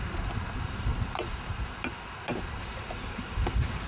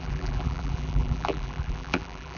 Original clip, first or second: first